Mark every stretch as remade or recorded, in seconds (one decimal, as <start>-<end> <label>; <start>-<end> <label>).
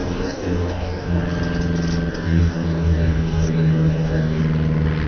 0.0-1.2 remade; 1.2-2.1 recorded; 2.1-4.4 remade; 4.4-5.1 recorded